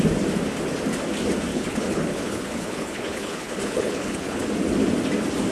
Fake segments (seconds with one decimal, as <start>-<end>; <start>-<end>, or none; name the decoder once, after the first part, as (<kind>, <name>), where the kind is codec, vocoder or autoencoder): 1.5-4.5 (codec, HILCodec)